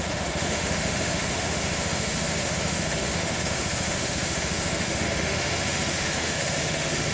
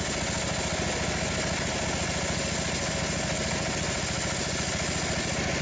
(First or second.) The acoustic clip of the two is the second